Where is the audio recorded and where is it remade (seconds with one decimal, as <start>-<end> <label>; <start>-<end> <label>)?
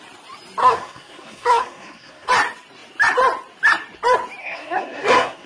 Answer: 0.0-0.6 recorded; 0.6-2.3 remade; 2.3-4.4 recorded; 4.4-5.5 remade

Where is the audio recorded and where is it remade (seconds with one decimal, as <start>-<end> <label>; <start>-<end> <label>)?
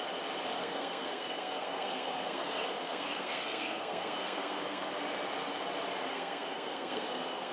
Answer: 0.0-0.6 recorded; 0.6-4.9 remade; 4.9-6.1 recorded; 6.1-7.5 remade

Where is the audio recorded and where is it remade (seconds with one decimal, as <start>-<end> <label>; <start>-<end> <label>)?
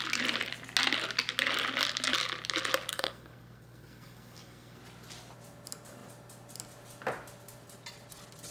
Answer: 0.0-2.9 recorded; 2.9-4.8 remade; 4.8-8.5 recorded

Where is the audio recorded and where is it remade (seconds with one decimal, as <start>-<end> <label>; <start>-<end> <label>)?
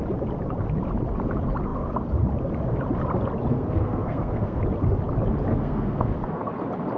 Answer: 0.0-3.5 recorded; 3.5-4.6 remade; 4.6-5.5 recorded; 5.5-6.4 remade; 6.4-7.0 recorded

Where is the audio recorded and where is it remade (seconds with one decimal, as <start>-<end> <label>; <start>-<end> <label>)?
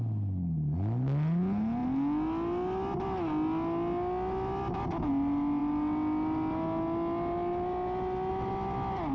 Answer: 0.0-9.1 recorded